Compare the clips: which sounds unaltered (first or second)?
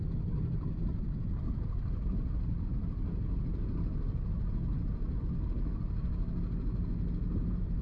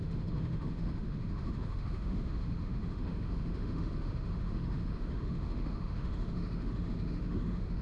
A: first